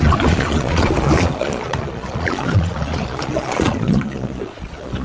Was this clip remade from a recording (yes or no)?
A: yes